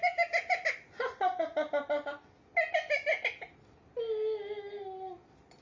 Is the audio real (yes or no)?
yes